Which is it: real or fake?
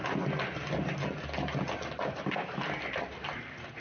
real